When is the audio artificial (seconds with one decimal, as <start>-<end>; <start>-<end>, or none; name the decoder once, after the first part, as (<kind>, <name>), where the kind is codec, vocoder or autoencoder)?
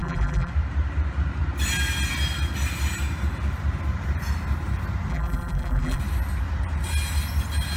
0.0-0.5 (vocoder, BigVGAN v2); 5.1-6.0